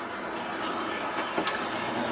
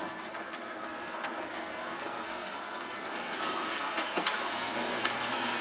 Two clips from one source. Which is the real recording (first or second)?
first